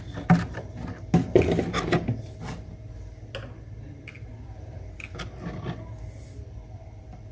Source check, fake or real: real